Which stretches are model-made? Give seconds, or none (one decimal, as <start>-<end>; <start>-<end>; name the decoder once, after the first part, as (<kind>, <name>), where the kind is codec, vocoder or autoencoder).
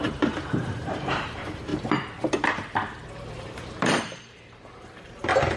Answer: 0.0-1.7 (vocoder, BigVGAN v2); 3.3-5.6